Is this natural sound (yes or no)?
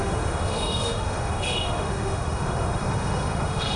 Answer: no